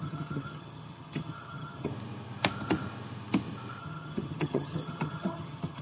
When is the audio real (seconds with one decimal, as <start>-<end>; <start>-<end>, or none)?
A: 1.9-3.8